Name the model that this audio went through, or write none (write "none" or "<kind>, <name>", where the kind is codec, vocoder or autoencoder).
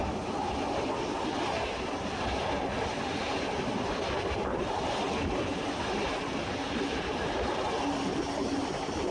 none